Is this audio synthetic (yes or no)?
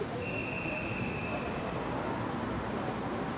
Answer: no